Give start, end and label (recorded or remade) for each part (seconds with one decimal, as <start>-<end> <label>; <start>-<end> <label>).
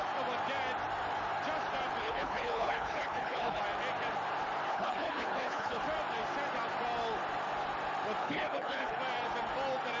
0.0-2.0 recorded; 2.0-3.6 remade; 3.6-4.7 recorded; 4.7-5.8 remade; 5.8-8.2 recorded; 8.2-9.0 remade; 9.0-10.0 recorded